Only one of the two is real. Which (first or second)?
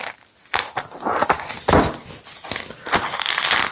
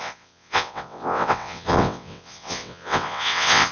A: first